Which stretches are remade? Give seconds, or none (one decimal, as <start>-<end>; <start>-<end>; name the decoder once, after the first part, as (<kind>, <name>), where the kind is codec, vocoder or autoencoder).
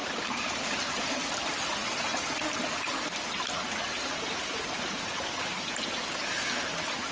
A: 0.0-1.0 (vocoder, BigVGAN v2); 1.8-2.6